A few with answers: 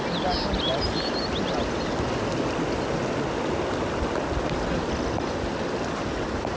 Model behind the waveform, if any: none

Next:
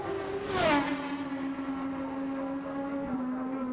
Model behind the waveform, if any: none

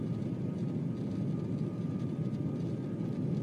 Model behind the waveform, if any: none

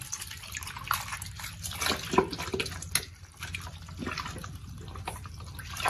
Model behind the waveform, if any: none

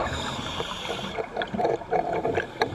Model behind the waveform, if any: vocoder, BigVGAN v2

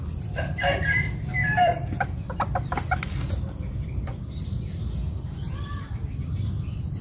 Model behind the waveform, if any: vocoder, BigVGAN v2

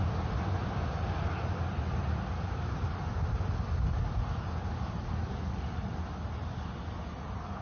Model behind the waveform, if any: none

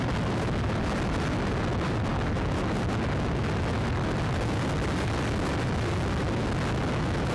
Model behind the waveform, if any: none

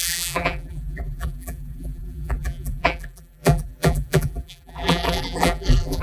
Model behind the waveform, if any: vocoder, BigVGAN v2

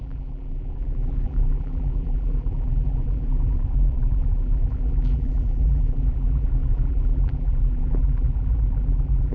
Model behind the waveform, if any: vocoder, BigVGAN v2